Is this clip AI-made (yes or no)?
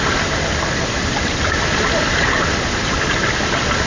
no